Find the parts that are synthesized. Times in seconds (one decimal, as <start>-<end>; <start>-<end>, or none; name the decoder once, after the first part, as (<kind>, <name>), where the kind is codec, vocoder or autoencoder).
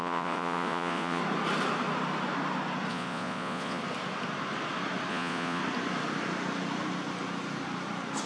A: 0.0-1.2 (vocoder, Vocos); 2.9-3.8; 5.1-5.6